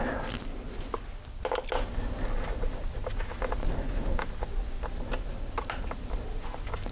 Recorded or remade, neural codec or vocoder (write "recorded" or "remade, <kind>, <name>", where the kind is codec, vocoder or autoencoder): recorded